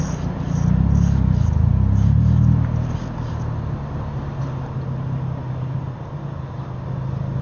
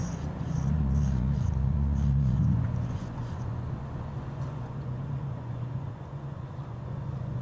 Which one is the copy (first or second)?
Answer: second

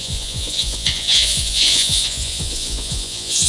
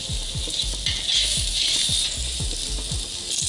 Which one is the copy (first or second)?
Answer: first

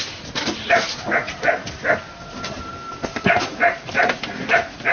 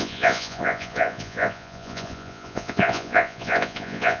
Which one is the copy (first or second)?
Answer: second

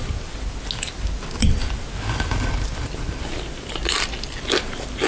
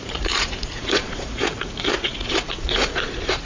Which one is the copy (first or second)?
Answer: second